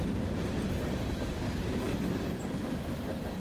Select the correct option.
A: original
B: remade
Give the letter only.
A